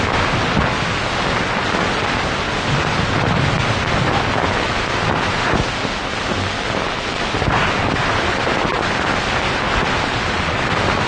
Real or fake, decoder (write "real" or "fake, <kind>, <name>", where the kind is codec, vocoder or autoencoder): real